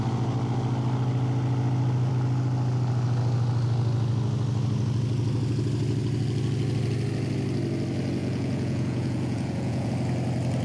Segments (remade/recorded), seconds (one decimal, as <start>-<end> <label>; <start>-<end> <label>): 0.0-8.2 recorded; 8.2-9.9 remade; 9.9-10.6 recorded